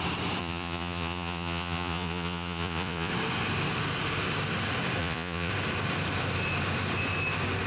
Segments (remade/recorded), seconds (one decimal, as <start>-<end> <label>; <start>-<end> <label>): 0.0-0.4 recorded; 0.4-3.1 remade; 3.1-5.0 recorded; 5.0-5.5 remade; 5.5-7.7 recorded